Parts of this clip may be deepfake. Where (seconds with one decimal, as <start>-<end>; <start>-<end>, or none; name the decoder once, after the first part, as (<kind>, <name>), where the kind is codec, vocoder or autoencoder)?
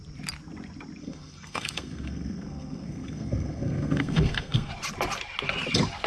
1.0-4.7 (codec, SNAC)